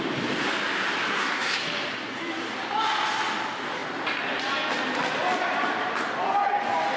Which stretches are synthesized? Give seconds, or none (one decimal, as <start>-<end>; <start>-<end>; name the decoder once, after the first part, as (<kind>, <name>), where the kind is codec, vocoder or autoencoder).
1.1-1.6 (codec, SNAC)

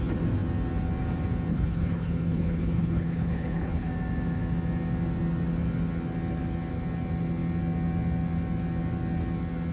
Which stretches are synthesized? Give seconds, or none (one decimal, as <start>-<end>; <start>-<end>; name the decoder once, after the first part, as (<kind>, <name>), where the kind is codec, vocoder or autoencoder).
1.5-3.9 (codec, HILCodec)

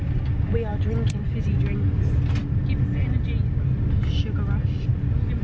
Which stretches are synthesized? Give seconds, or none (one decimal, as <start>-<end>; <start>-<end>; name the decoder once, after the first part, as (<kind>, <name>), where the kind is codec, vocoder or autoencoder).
none

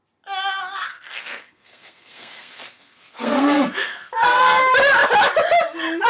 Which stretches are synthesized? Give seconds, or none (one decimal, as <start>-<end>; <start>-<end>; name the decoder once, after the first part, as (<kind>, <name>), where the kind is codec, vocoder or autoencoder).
0.9-4.6 (codec, SNAC)

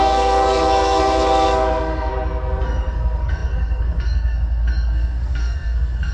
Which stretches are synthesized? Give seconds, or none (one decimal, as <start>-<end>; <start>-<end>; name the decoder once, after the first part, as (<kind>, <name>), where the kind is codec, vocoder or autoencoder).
0.0-2.1 (codec, SNAC); 2.6-6.1